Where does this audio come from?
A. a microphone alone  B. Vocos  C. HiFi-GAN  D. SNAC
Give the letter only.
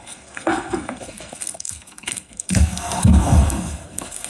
D